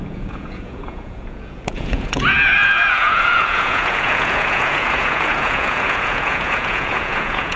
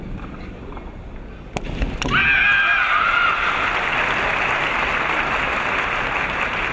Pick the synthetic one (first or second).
first